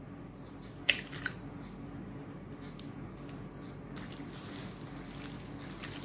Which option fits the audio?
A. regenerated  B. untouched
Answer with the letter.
B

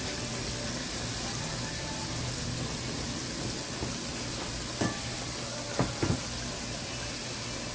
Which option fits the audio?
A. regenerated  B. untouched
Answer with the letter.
B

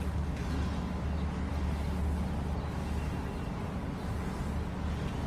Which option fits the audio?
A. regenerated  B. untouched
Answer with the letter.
B